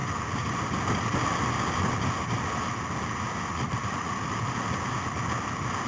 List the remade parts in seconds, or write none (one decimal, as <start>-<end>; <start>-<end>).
3.5-4.2